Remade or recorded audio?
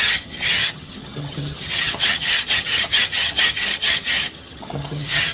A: remade